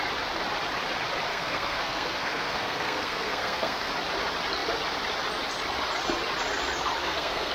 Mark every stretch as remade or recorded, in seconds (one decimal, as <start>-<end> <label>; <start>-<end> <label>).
0.0-1.3 recorded; 1.3-3.9 remade; 3.9-7.0 recorded; 7.0-7.5 remade